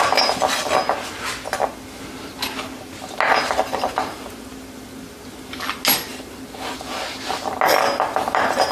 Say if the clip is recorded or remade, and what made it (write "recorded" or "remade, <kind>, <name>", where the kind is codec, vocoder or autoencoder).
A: recorded